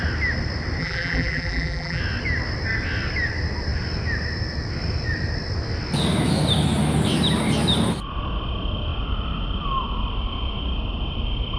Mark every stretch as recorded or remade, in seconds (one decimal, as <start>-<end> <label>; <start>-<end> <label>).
0.0-0.8 recorded; 0.8-2.0 remade; 2.0-11.6 recorded